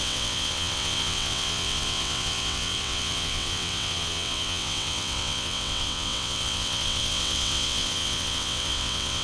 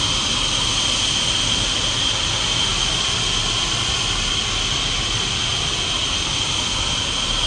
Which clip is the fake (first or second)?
first